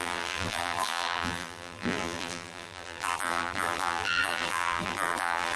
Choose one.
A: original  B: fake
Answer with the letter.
B